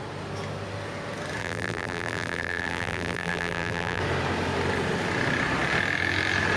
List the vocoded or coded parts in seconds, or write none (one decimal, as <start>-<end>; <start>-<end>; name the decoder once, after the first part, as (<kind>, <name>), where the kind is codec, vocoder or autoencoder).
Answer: 1.4-4.0 (vocoder, BigVGAN v2)